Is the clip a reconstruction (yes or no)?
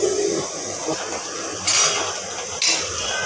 no